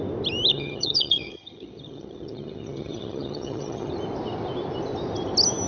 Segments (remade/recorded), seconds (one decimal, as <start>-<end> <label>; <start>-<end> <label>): 0.0-0.5 recorded; 0.5-3.9 remade; 3.9-5.7 recorded